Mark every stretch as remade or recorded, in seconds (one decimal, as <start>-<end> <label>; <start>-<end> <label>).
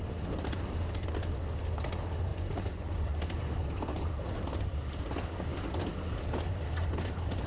0.0-2.3 recorded; 2.3-3.2 remade; 3.2-7.5 recorded